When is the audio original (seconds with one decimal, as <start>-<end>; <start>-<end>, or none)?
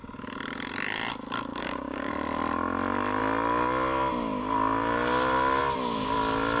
0.0-1.5; 2.1-6.6